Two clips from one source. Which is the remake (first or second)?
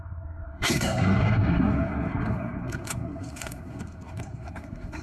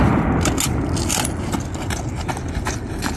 first